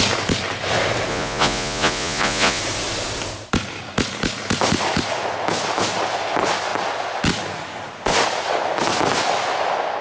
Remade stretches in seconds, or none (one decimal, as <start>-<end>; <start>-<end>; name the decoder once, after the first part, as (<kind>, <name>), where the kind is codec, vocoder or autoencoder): 1.1-2.6 (vocoder, Vocos)